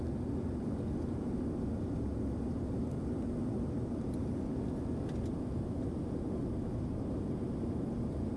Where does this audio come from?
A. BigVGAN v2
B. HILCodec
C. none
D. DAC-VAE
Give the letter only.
C